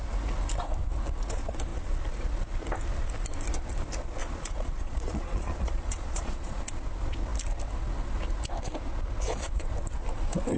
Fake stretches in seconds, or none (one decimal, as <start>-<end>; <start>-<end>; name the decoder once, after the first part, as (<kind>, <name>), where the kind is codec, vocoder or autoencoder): 4.2-6.6 (vocoder, Vocos)